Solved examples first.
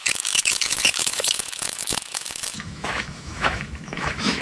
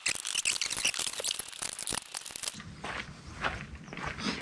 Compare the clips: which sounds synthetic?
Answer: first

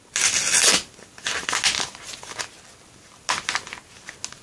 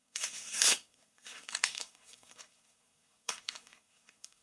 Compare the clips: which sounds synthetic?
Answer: second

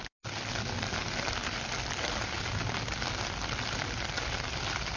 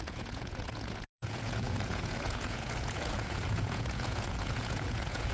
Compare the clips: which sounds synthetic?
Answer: second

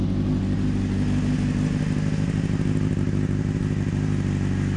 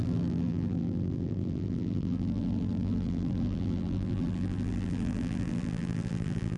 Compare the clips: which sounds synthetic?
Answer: second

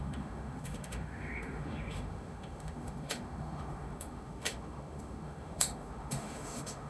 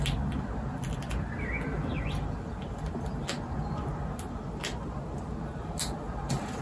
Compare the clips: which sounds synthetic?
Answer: first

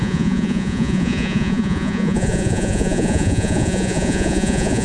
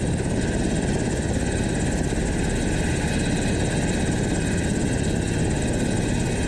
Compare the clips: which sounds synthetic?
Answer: first